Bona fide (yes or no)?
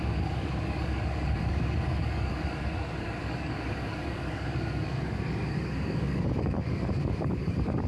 no